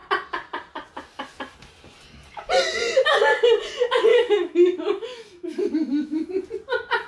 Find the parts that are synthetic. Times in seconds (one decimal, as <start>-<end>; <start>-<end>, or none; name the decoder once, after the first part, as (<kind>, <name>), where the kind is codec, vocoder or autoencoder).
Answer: 4.1-6.3 (autoencoder, DAC-VAE)